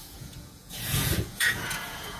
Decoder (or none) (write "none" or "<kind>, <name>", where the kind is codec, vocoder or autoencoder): vocoder, Vocos